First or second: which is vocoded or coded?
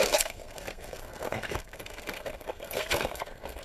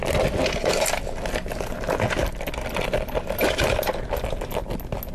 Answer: first